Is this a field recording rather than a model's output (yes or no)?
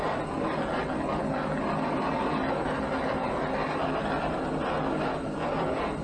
yes